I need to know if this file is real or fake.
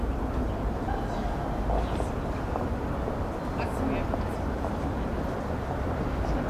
real